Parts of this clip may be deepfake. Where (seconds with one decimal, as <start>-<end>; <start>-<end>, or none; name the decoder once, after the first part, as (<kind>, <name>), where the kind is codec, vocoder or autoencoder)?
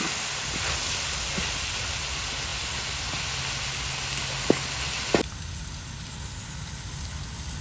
none